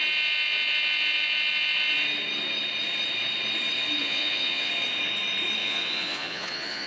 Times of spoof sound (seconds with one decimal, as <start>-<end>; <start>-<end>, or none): 4.0-4.7; 5.6-6.9

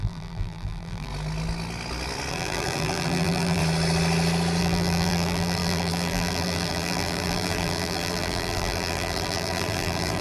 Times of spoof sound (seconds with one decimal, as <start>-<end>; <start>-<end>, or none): 0.0-1.1; 2.3-3.6; 4.6-10.2

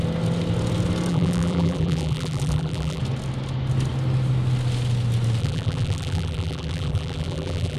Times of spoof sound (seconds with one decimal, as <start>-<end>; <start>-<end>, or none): 1.1-3.0; 5.4-7.8

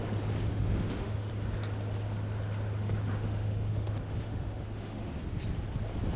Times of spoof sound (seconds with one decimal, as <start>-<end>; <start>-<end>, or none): 0.5-1.3; 3.1-5.1

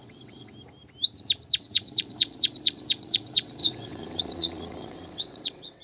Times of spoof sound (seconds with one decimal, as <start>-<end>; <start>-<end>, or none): 0.0-0.5; 1.6-5.8

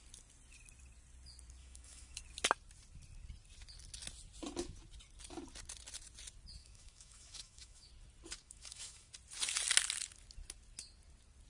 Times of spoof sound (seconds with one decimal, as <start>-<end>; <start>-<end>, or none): 1.6-2.2; 6.6-7.9; 8.4-9.1

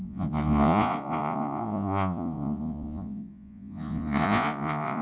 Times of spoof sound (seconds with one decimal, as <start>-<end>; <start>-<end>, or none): 0.0-5.0

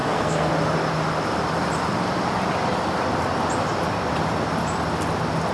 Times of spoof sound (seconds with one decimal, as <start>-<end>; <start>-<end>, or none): 0.0-0.5